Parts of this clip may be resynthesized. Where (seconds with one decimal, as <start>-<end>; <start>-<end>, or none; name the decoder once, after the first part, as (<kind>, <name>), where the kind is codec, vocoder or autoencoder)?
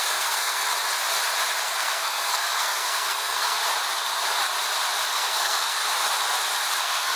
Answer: 0.0-0.7 (codec, SNAC); 1.6-3.6; 5.1-5.8; 6.8-7.2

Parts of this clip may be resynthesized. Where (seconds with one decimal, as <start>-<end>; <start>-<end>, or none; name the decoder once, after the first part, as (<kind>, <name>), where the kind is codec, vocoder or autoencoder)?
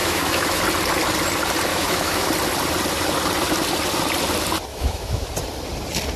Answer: 0.0-0.6 (autoencoder, DAC-VAE); 1.7-2.3; 4.7-5.3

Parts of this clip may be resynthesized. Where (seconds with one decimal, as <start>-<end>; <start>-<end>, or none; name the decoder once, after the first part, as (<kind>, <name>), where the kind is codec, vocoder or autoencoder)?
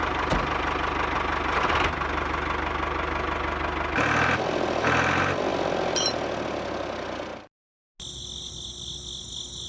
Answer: none